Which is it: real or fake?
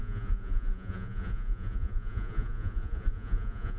fake